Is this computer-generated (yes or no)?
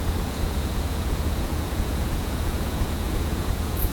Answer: yes